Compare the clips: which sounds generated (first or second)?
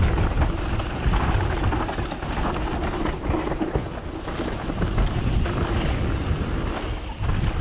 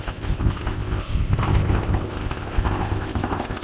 second